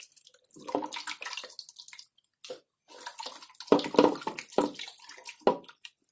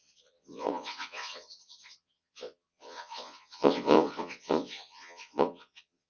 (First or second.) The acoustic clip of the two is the first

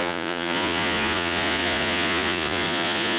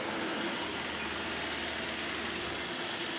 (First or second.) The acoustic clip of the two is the second